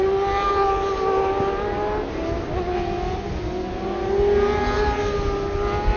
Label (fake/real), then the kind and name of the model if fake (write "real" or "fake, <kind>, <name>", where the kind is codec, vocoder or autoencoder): real